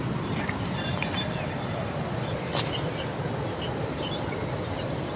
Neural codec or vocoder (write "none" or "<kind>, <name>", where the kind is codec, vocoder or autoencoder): vocoder, BigVGAN v2